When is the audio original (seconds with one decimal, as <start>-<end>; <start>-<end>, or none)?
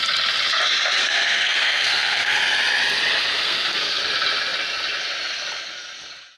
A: 0.0-1.0; 2.4-3.3; 4.0-6.4